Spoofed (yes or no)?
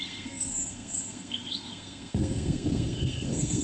yes